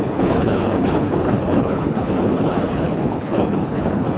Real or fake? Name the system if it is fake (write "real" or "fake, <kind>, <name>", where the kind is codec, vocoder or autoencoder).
fake, codec, HILCodec